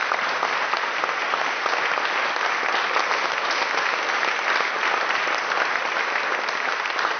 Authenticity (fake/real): real